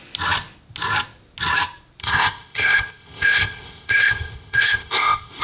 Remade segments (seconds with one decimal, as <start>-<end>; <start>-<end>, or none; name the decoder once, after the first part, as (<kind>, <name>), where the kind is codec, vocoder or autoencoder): 2.0-5.4 (codec, ZipCodec)